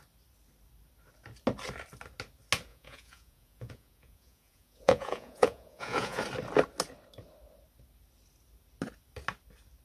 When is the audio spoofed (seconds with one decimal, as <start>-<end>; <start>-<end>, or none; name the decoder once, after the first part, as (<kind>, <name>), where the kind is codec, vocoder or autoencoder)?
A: 2.7-6.2 (vocoder, Vocos)